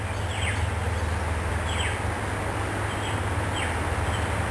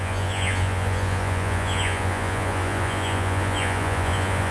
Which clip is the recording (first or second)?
first